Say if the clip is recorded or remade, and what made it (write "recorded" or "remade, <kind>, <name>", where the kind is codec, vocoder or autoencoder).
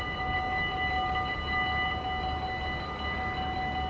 recorded